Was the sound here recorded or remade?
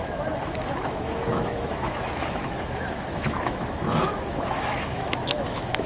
remade